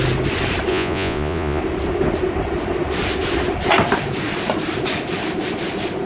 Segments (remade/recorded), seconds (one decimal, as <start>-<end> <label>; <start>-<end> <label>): 0.0-0.7 recorded; 0.7-1.6 remade; 1.6-6.1 recorded